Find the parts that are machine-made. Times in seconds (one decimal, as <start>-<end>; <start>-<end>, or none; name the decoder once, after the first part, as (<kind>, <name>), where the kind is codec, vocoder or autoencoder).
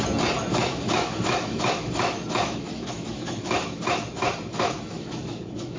0.5-4.0 (autoencoder, DAC-VAE); 4.5-5.8